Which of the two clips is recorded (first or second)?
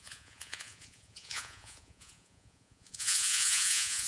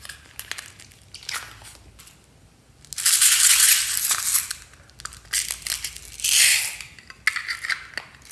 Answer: second